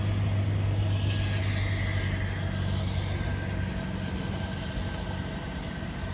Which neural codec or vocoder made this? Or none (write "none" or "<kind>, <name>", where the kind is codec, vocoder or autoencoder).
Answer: none